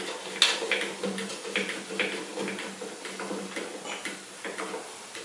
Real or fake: real